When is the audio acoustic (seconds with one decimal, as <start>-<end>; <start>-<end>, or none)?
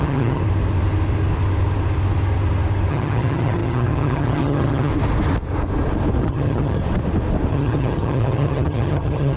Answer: 0.4-2.9; 4.9-6.2; 6.8-7.5